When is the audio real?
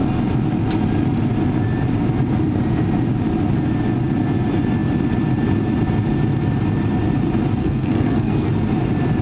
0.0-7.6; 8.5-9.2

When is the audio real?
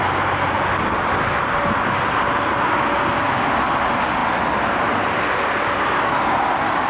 0.0-6.9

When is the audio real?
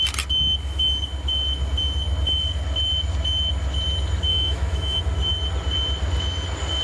0.0-4.3; 5.0-6.8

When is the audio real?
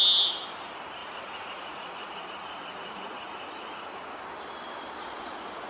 0.0-1.0; 3.8-5.0